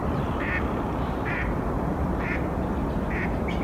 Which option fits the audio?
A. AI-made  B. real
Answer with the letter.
B